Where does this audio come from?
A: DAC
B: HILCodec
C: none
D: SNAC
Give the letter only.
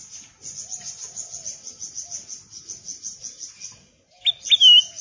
C